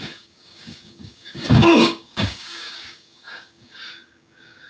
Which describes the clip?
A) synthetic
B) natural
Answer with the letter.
A